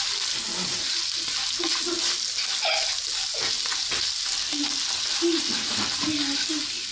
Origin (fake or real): real